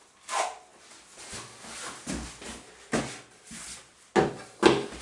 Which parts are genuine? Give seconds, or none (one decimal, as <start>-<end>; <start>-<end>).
0.0-5.0